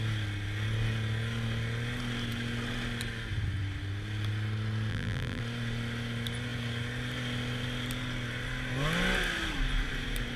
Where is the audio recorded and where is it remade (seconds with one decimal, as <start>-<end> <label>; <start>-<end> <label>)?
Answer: 0.0-4.9 recorded; 4.9-5.4 remade; 5.4-10.4 recorded